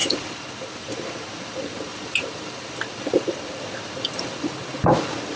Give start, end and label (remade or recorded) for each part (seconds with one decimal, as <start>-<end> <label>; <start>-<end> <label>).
0.0-0.7 remade; 0.7-1.9 recorded; 1.9-4.9 remade; 4.9-5.4 recorded